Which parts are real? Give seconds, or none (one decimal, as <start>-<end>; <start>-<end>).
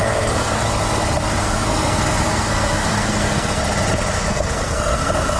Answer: 0.6-1.4; 3.6-4.3